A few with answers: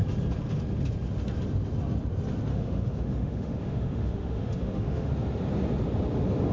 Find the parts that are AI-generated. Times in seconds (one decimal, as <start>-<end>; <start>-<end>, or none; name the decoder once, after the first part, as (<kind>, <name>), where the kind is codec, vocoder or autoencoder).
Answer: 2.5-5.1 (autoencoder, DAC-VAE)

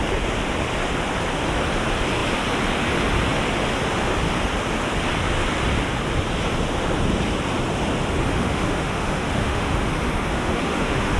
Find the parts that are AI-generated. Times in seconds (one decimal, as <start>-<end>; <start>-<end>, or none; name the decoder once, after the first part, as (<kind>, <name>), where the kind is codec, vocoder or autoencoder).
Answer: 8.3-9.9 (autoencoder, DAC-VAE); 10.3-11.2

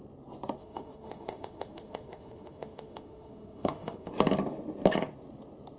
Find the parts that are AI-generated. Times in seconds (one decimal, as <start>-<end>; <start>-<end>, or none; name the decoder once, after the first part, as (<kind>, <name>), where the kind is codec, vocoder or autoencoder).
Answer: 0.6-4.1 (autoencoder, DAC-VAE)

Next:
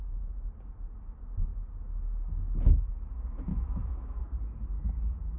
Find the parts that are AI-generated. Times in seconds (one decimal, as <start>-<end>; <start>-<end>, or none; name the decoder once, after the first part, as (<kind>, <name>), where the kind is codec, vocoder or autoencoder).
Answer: 3.5-4.2 (autoencoder, DAC-VAE)